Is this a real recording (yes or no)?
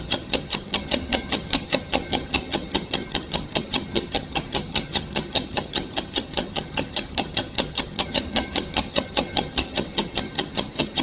no